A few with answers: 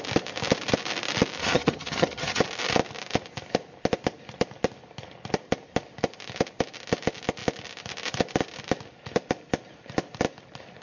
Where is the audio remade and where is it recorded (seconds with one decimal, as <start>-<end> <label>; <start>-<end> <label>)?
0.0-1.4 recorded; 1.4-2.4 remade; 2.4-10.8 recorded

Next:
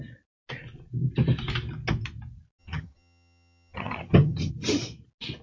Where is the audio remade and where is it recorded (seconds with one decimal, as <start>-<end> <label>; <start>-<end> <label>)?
0.0-2.6 recorded; 2.6-4.5 remade; 4.5-5.4 recorded

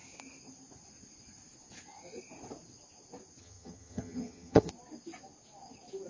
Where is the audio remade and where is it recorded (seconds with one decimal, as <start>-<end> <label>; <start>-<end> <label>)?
0.0-3.4 recorded; 3.4-4.7 remade; 4.7-6.1 recorded